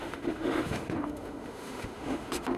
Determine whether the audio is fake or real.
fake